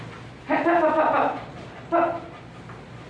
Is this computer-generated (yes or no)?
no